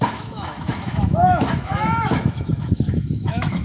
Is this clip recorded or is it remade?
remade